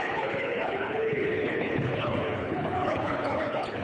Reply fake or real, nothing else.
fake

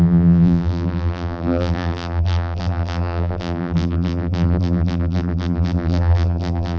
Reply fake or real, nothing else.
fake